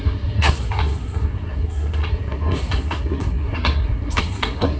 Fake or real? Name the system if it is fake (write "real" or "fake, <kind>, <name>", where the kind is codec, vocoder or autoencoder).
fake, codec, SNAC